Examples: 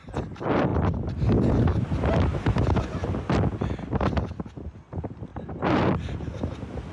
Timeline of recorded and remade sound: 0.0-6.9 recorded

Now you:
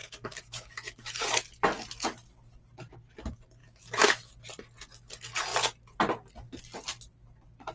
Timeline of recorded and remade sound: 0.0-1.2 remade; 1.2-3.6 recorded; 3.6-4.3 remade; 4.3-7.7 recorded

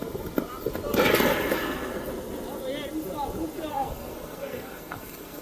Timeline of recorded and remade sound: 0.0-1.5 recorded; 1.5-2.1 remade; 2.1-3.7 recorded; 3.7-5.4 remade

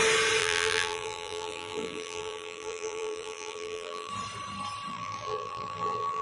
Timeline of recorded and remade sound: 0.0-0.4 recorded; 0.4-4.1 remade; 4.1-4.9 recorded; 4.9-6.2 remade

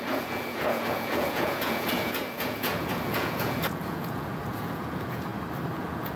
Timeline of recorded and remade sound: 0.0-5.3 remade; 5.3-5.8 recorded; 5.8-6.2 remade

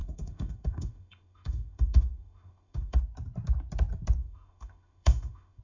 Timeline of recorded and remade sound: 0.0-3.0 remade; 3.0-4.2 recorded; 4.2-5.6 remade

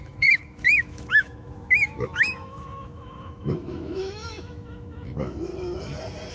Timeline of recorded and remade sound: 0.0-5.5 remade; 5.5-6.3 recorded